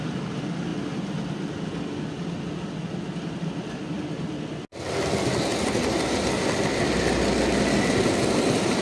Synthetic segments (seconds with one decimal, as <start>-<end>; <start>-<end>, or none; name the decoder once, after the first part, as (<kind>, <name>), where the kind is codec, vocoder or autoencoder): none